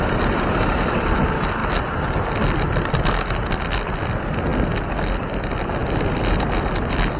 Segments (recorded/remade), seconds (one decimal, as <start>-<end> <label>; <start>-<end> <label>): 0.0-1.6 remade; 1.6-2.4 recorded; 2.4-4.5 remade; 4.5-5.1 recorded; 5.1-7.2 remade